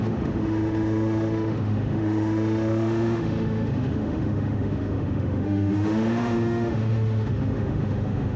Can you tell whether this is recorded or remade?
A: remade